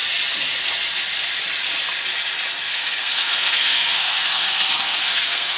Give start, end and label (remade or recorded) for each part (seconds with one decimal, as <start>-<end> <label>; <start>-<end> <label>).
0.0-2.7 recorded; 2.7-5.6 remade